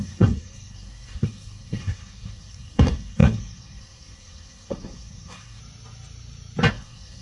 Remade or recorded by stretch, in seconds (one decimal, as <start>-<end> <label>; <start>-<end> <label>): 0.0-5.6 remade; 5.6-6.7 recorded; 6.7-7.2 remade